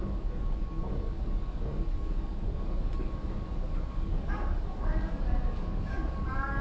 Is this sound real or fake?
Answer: fake